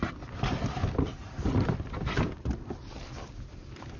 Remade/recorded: recorded